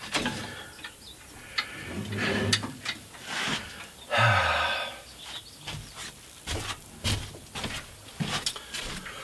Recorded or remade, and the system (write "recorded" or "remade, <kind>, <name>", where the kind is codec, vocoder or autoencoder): recorded